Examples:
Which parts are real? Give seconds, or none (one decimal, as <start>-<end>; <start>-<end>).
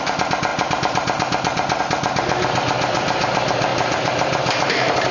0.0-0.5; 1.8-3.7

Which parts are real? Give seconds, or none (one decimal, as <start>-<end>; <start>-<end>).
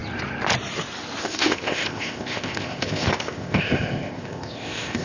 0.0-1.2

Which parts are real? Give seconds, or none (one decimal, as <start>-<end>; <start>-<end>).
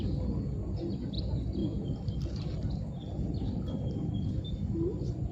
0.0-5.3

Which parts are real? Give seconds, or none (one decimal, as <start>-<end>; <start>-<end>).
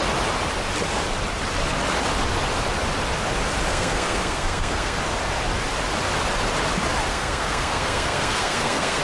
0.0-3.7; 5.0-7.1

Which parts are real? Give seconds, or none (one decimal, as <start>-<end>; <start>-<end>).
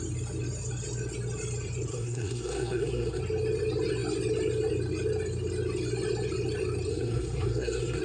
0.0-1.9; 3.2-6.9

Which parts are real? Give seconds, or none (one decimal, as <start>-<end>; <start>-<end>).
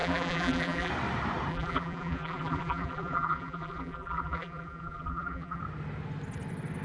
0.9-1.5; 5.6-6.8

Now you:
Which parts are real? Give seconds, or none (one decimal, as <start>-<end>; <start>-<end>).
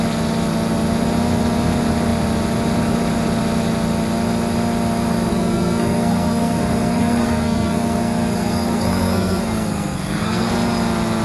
0.0-5.3; 10.5-11.2